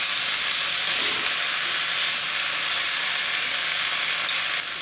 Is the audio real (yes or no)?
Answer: yes